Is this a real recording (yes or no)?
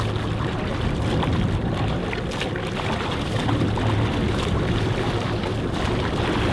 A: yes